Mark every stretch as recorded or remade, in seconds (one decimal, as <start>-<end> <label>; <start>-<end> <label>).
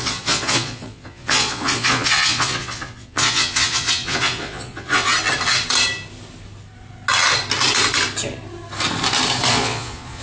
0.0-5.1 remade; 5.1-9.5 recorded; 9.5-10.2 remade